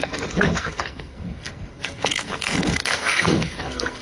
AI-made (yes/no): yes